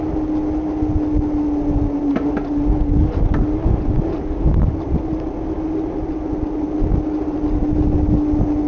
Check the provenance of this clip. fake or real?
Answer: real